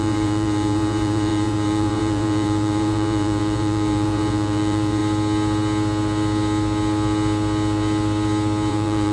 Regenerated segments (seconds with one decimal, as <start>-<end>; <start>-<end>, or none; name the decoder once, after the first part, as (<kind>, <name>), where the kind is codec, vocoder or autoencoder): 0.0-5.0 (vocoder, Vocos); 8.7-9.1